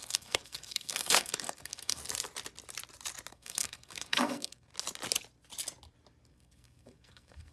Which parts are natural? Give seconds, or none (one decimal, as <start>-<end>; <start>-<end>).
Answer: 2.0-3.3; 4.7-6.3